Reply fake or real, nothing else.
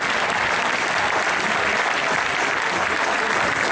fake